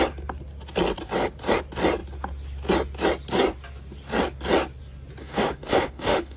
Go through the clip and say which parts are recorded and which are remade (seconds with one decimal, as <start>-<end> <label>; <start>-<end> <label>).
0.0-5.2 recorded; 5.2-6.4 remade